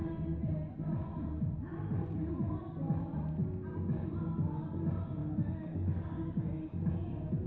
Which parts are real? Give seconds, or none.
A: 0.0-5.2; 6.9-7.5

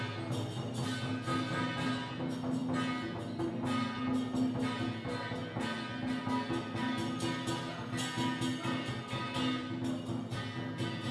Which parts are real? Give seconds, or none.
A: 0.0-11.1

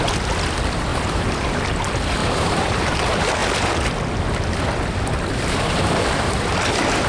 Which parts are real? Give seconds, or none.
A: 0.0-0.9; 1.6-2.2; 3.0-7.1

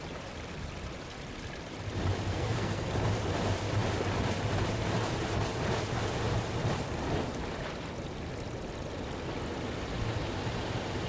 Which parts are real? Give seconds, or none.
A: 0.0-2.3; 2.9-11.1

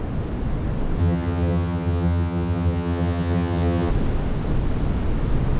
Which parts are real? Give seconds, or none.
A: 0.0-1.0; 3.9-5.6